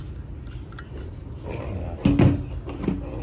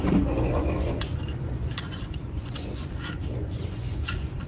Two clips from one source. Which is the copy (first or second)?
second